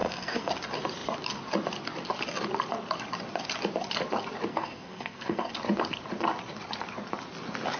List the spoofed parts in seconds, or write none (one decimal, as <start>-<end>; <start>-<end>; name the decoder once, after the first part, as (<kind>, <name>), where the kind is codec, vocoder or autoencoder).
0.0-0.5 (codec, SNAC); 4.5-5.5